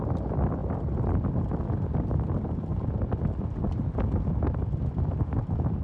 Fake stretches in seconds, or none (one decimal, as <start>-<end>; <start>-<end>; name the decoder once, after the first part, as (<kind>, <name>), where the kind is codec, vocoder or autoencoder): none